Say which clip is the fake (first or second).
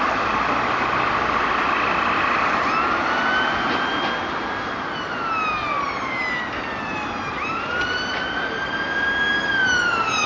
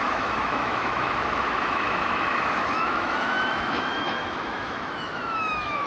second